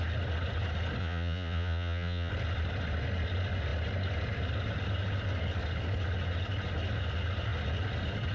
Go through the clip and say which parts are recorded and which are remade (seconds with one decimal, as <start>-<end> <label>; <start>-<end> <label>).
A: 0.0-1.0 recorded; 1.0-2.3 remade; 2.3-8.3 recorded